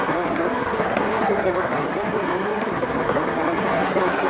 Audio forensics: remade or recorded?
remade